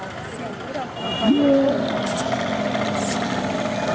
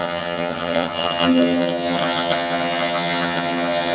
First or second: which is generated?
second